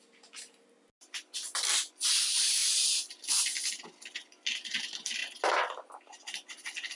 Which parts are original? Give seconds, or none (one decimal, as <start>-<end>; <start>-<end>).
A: 0.0-7.0